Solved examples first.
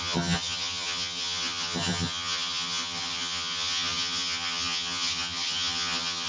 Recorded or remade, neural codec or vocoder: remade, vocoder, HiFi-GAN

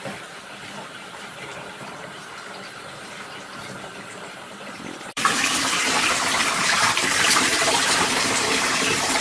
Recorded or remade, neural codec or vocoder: remade, vocoder, BigVGAN v2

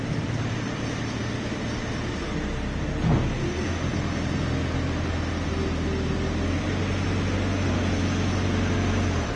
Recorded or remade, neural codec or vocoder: recorded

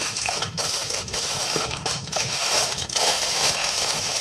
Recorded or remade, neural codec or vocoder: remade, autoencoder, DAC-VAE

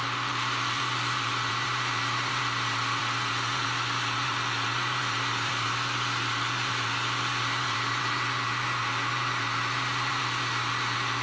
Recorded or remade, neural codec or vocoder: remade, vocoder, BigVGAN v2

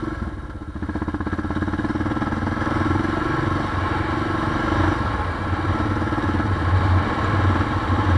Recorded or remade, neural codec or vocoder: recorded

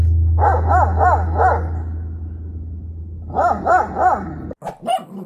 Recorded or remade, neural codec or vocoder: recorded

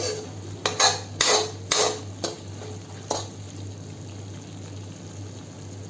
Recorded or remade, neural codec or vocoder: recorded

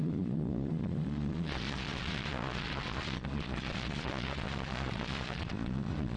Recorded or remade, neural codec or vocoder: remade, vocoder, Vocos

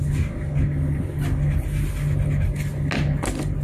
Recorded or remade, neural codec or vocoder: recorded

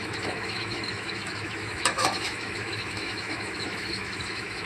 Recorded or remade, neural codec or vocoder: remade, autoencoder, DAC-VAE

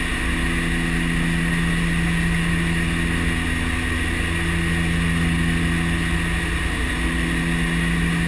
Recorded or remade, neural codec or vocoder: recorded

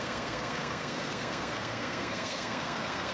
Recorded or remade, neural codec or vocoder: remade, codec, SNAC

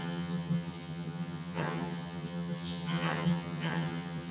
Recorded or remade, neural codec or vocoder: remade, vocoder, HiFi-GAN